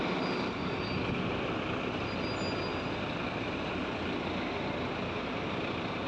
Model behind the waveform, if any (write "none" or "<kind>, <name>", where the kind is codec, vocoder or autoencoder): none